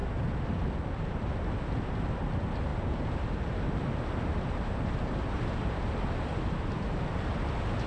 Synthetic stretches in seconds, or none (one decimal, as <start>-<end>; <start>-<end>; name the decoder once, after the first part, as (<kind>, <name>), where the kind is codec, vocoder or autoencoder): 2.7-7.4 (vocoder, BigVGAN v2)